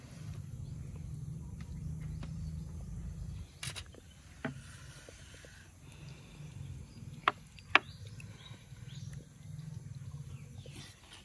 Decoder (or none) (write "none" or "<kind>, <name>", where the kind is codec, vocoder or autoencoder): none